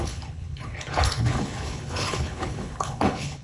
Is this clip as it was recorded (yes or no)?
no